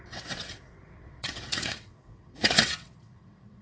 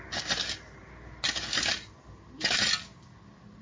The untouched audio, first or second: second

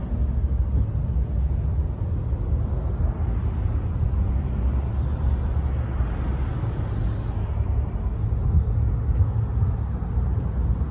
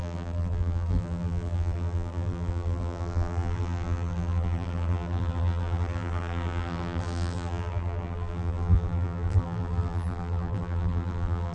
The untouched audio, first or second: first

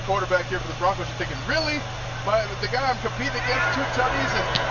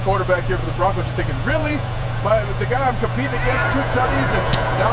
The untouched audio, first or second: first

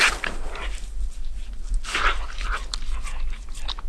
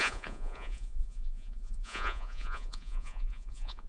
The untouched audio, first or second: first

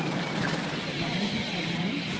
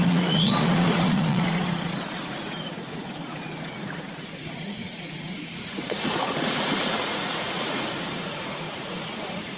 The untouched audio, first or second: first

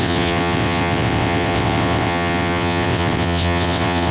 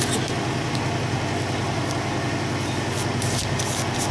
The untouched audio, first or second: second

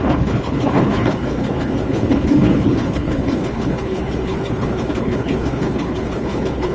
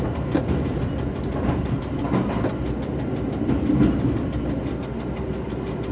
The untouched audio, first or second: second